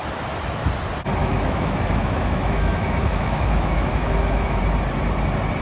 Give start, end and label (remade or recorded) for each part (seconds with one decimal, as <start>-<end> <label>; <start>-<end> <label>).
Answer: 0.0-1.2 recorded; 1.2-4.6 remade; 4.6-5.6 recorded